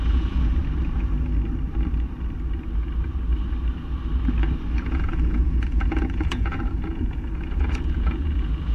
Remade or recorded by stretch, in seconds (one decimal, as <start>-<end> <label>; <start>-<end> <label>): 0.0-0.6 remade; 0.6-4.9 recorded; 4.9-8.7 remade